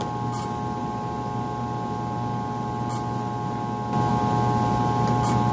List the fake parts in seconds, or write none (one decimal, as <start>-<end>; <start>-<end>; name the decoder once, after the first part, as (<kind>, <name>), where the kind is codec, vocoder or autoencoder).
none